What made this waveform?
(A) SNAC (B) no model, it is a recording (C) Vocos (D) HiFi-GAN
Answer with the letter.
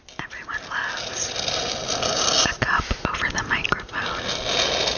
B